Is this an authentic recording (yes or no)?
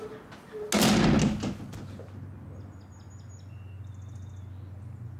yes